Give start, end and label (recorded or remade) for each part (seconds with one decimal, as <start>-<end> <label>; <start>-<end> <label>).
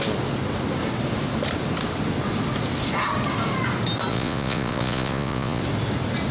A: 0.0-4.1 recorded; 4.1-5.6 remade; 5.6-6.3 recorded